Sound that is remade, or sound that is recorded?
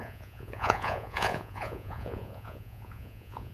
remade